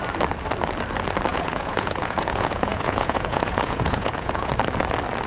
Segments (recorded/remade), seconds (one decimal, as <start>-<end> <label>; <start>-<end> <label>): 0.0-1.3 recorded; 1.3-4.5 remade; 4.5-5.3 recorded